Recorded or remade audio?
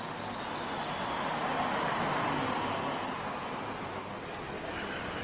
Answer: recorded